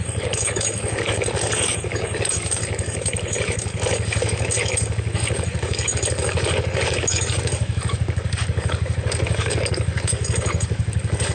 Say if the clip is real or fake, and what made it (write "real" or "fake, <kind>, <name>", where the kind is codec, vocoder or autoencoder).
fake, codec, DAC